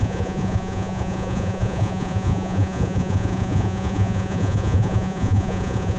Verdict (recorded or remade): remade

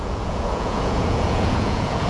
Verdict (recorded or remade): remade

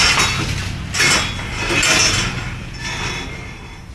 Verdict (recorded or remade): recorded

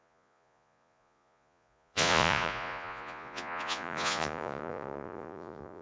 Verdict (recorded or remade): remade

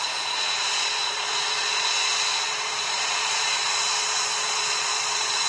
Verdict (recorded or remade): remade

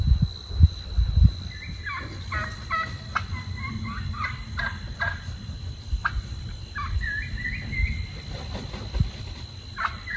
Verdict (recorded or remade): recorded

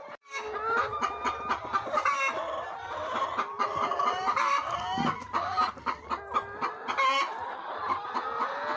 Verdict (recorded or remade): recorded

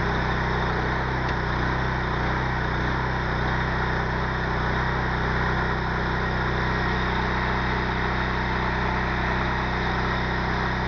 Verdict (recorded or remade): recorded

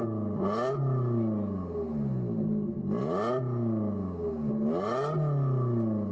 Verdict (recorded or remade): recorded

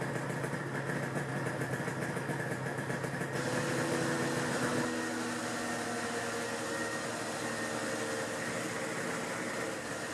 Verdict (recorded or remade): recorded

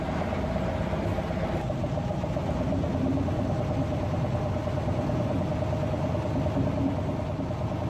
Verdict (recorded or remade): recorded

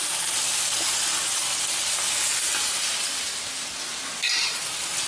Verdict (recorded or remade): recorded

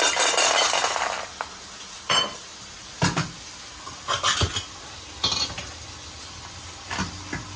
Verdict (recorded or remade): recorded